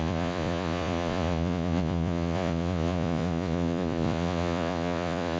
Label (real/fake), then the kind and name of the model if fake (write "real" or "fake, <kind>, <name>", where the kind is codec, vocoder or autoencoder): fake, vocoder, Vocos